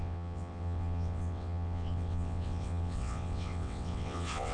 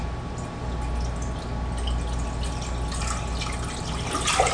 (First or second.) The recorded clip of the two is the second